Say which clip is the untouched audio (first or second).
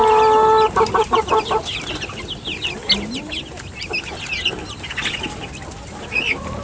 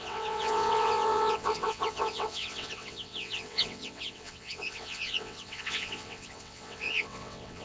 first